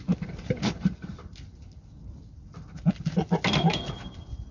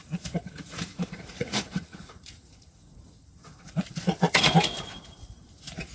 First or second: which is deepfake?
second